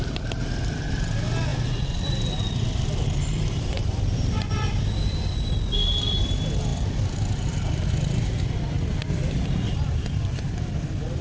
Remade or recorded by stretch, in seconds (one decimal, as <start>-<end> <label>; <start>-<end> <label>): 0.0-1.5 recorded; 1.5-5.4 remade; 5.4-6.7 recorded; 6.7-9.7 remade; 9.7-11.2 recorded